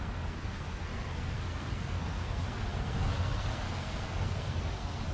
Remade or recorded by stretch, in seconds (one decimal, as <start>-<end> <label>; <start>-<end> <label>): 0.0-5.1 remade